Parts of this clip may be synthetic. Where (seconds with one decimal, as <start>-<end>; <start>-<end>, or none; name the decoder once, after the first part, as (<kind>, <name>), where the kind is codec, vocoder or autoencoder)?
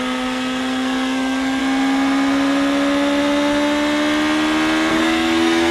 0.0-1.6 (codec, SNAC); 4.9-5.7